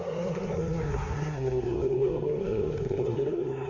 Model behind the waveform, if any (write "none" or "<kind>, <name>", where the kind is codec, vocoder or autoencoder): codec, SNAC